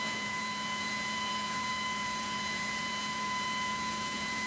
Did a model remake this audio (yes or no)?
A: yes